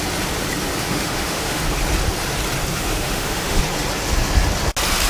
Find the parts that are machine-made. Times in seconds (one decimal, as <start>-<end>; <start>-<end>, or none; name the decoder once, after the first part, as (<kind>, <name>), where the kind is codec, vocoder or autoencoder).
0.8-1.6 (autoencoder, DAC-VAE); 2.7-3.6